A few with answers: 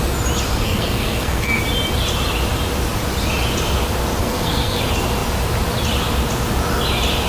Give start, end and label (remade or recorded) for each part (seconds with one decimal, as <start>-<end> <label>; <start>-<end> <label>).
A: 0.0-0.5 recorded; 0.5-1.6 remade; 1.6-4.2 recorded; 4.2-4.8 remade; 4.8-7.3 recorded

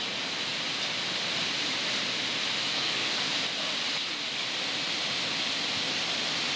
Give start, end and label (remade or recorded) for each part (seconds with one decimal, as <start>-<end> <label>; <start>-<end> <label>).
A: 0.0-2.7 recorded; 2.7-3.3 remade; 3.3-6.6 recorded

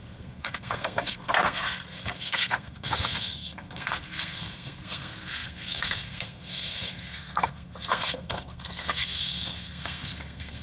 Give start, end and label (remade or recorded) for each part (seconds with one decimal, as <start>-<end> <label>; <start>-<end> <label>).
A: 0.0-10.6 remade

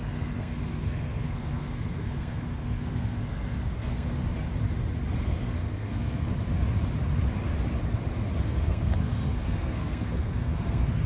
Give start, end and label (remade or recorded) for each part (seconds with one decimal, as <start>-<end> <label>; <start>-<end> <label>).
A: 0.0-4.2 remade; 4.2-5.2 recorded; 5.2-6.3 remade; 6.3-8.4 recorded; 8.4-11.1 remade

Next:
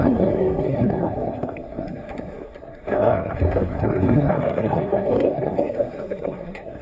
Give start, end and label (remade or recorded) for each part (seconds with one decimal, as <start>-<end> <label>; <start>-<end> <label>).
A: 0.0-6.8 remade

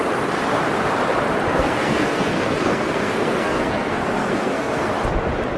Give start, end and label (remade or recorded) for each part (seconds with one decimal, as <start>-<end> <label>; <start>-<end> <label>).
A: 0.0-1.5 recorded; 1.5-4.9 remade; 4.9-5.6 recorded

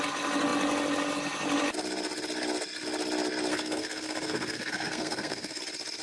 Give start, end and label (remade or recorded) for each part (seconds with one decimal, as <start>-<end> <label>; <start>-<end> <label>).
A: 0.0-3.5 recorded; 3.5-5.6 remade; 5.6-6.0 recorded

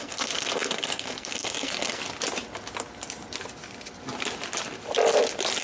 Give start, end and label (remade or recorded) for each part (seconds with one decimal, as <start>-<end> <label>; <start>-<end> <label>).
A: 0.0-2.0 remade; 2.0-5.6 recorded